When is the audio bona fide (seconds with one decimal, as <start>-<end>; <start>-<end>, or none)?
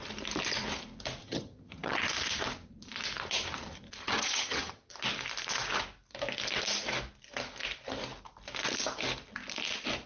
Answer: 0.0-1.2; 2.0-4.0; 4.9-10.1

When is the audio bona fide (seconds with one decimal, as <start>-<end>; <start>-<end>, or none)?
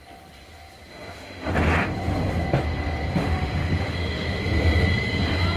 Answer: 0.0-0.9; 1.5-3.2; 4.4-5.6